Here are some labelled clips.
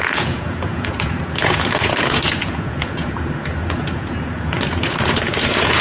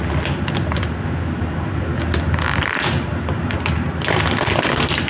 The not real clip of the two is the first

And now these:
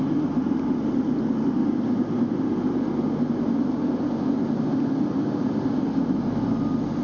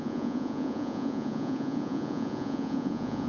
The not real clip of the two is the second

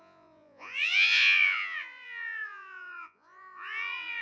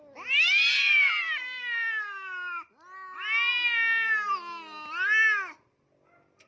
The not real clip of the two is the first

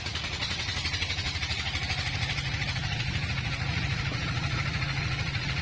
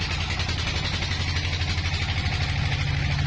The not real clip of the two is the first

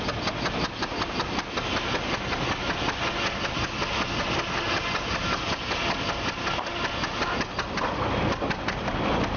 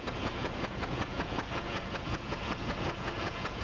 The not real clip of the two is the second